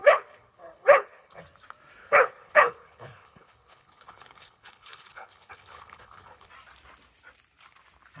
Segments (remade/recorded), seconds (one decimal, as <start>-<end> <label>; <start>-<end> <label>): 0.0-1.4 remade; 1.4-2.0 recorded; 2.0-6.5 remade; 6.5-8.2 recorded